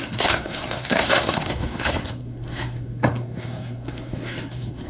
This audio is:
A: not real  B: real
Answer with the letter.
A